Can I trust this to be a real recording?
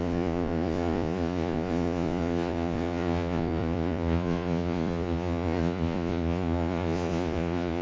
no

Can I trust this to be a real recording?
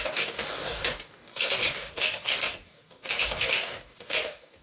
no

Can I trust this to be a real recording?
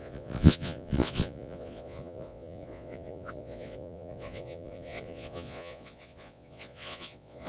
no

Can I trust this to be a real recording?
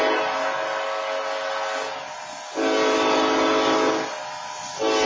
yes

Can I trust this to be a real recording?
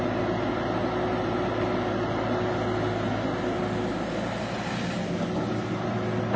yes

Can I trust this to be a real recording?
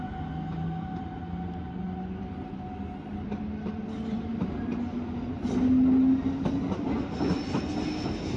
yes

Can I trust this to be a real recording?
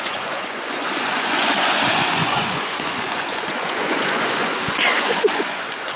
no